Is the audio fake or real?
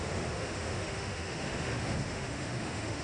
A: fake